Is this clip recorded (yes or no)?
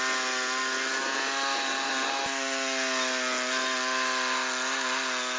yes